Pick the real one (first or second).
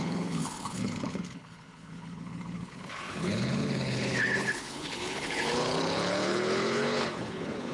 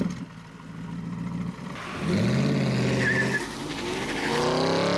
second